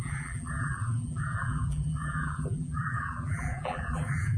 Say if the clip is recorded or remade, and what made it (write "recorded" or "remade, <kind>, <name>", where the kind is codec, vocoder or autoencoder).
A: remade, vocoder, BigVGAN v2